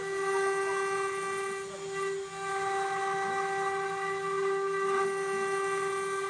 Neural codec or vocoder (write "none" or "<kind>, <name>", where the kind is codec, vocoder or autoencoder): none